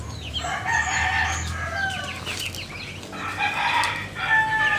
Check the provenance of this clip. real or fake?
real